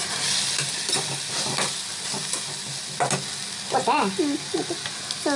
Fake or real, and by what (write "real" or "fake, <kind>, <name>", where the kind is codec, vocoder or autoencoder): real